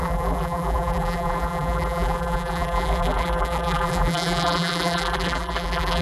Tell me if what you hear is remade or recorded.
remade